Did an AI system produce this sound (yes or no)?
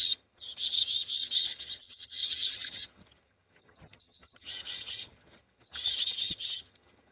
yes